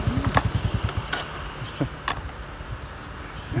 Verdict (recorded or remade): recorded